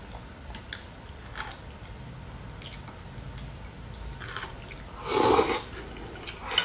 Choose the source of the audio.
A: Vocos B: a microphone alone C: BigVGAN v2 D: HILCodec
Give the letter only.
B